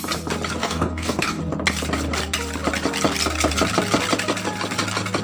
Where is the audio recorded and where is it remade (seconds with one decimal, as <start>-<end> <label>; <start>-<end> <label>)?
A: 0.0-0.6 recorded; 0.6-1.4 remade; 1.4-5.2 recorded